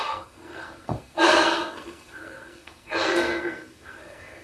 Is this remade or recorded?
remade